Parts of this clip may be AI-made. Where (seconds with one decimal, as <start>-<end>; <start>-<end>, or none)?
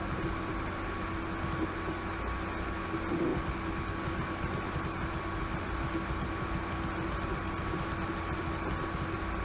none